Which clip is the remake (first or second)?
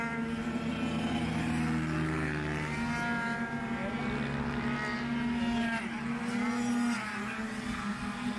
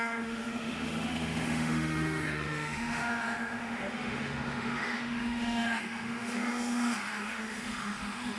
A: second